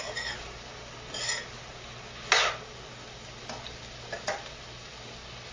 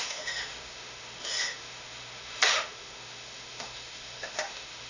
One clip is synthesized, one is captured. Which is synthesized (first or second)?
second